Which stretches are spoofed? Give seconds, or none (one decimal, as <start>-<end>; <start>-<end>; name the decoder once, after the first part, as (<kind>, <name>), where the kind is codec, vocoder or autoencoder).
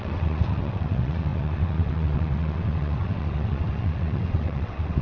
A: 0.0-5.0 (vocoder, WaveNeXt)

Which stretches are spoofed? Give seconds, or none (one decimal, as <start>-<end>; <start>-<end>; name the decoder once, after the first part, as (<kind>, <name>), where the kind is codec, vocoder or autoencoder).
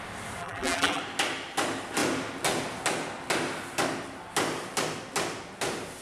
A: 0.4-1.0 (vocoder, BigVGAN v2)